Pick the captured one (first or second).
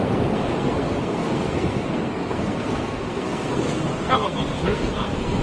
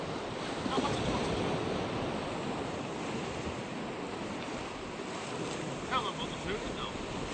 second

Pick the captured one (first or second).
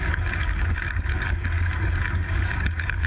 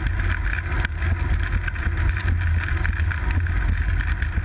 second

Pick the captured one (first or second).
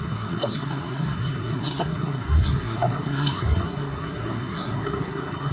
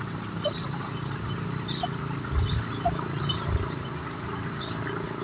second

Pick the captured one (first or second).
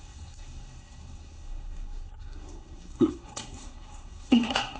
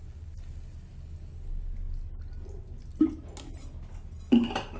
second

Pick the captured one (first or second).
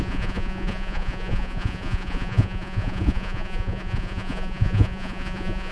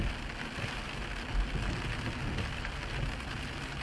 second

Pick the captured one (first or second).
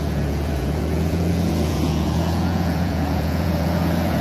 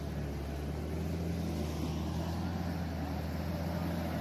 second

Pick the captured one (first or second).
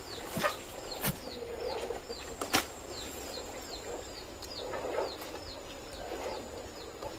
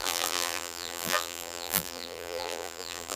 first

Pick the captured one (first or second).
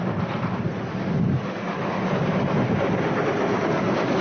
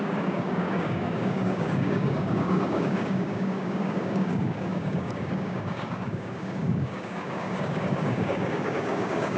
first